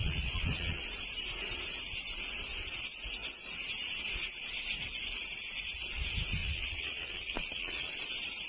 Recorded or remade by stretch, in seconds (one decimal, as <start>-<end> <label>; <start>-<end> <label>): 0.0-0.8 remade; 0.8-6.4 recorded; 6.4-7.9 remade; 7.9-8.5 recorded